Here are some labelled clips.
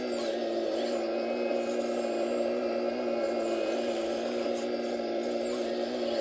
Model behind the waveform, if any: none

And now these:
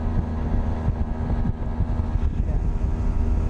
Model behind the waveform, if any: none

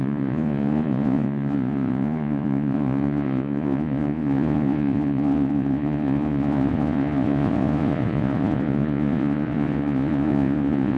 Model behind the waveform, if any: vocoder, Vocos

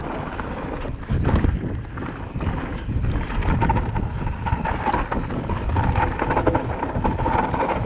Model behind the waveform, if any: none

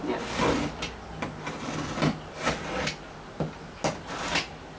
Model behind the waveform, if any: none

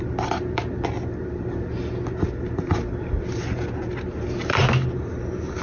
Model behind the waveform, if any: none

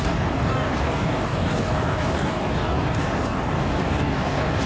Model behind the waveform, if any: codec, DAC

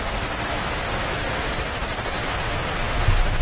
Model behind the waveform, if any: none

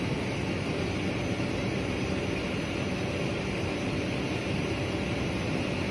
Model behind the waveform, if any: none